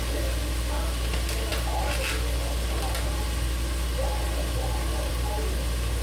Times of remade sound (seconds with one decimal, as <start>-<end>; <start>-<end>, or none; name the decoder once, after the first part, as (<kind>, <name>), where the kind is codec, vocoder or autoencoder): none